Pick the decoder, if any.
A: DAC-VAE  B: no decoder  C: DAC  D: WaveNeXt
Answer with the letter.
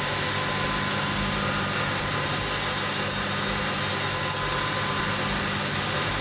B